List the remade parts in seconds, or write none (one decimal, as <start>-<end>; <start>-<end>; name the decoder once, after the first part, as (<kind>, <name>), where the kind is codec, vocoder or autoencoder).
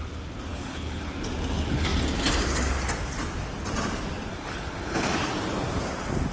0.5-1.1 (codec, HILCodec); 4.3-5.3